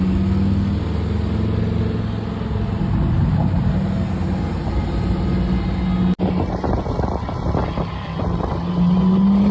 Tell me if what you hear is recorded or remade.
recorded